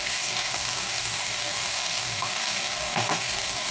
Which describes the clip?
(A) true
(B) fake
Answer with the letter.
B